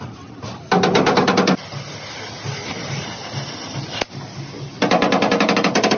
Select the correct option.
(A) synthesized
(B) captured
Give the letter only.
B